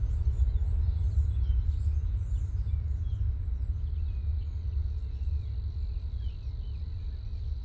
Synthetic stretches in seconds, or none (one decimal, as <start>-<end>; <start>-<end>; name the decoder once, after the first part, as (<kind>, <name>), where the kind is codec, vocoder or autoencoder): none

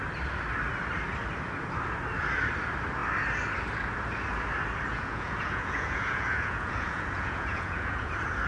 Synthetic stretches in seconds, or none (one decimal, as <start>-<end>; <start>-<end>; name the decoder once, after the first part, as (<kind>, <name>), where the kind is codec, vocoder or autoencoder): 4.9-8.1 (vocoder, Vocos)

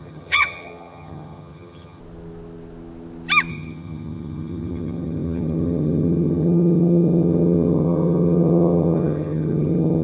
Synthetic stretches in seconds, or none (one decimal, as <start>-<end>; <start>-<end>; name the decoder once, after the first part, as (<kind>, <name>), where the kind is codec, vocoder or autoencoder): 0.0-2.0 (vocoder, HiFi-GAN); 3.5-10.0

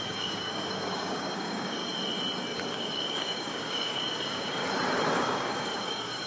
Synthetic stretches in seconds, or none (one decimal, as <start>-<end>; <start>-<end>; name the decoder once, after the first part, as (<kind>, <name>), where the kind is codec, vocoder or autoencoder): 0.0-1.8 (codec, DAC); 2.7-4.6; 5.1-6.3